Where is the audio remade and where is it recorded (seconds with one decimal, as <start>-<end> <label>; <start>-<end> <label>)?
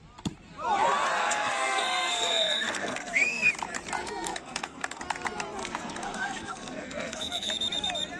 0.0-1.2 recorded; 1.2-3.5 remade; 3.5-4.0 recorded; 4.0-5.0 remade; 5.0-5.6 recorded; 5.6-7.5 remade; 7.5-8.2 recorded